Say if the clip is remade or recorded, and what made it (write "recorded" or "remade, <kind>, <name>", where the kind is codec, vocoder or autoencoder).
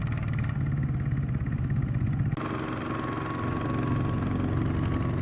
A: recorded